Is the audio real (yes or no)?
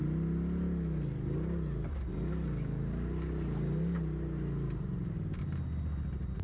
yes